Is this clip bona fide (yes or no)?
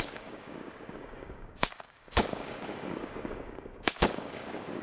no